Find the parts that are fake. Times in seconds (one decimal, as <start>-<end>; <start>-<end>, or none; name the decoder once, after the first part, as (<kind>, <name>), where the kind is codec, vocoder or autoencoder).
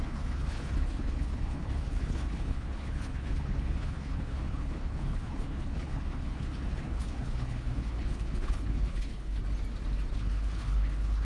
0.0-9.4 (codec, HILCodec); 10.1-11.2